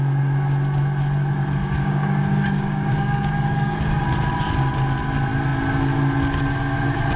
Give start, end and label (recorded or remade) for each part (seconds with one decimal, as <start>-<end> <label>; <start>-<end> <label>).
0.0-1.6 recorded; 1.6-4.0 remade; 4.0-7.2 recorded